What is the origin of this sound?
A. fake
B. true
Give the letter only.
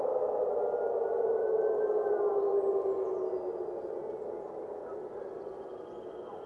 B